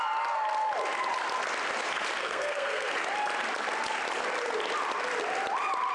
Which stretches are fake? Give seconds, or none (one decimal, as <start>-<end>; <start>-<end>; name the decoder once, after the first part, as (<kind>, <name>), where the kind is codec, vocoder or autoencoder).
2.2-2.9 (codec, SNAC)